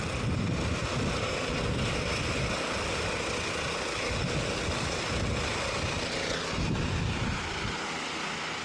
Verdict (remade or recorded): recorded